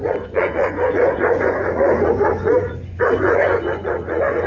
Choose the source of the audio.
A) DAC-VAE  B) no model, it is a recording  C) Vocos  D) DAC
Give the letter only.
C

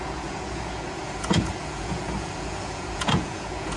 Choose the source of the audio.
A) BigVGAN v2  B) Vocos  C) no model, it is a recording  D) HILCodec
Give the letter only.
B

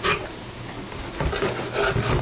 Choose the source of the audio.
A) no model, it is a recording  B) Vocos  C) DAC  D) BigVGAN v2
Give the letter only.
A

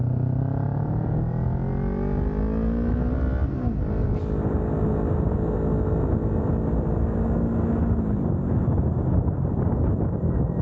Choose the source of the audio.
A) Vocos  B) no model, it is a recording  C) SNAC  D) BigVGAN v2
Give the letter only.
B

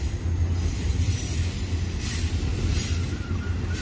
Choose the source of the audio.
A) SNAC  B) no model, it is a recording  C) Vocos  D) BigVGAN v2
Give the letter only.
B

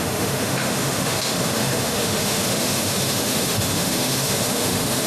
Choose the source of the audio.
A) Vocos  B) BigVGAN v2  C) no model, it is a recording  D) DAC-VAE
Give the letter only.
D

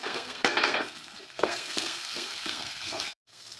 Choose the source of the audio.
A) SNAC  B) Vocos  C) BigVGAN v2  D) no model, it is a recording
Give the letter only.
A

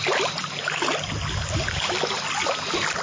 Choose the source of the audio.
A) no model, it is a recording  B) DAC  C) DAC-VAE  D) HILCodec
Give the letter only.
A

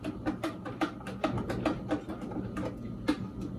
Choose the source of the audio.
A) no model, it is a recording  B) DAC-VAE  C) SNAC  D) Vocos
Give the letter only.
A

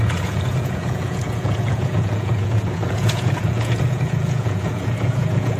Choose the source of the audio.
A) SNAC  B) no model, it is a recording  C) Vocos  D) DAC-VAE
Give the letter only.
C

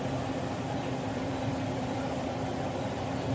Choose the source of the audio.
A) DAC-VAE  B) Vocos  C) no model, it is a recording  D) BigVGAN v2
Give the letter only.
D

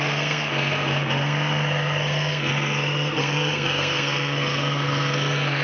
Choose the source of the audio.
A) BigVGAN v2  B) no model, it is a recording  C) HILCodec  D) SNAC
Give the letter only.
D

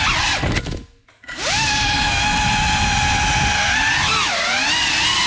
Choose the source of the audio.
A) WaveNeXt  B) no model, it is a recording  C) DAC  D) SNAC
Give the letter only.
B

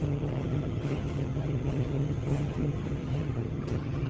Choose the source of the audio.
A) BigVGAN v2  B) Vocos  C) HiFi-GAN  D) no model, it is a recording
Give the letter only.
C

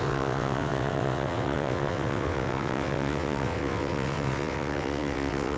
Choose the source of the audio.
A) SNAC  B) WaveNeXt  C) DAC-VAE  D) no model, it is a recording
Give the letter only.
B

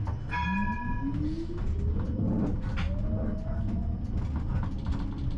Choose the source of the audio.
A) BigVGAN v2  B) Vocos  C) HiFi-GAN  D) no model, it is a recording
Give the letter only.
D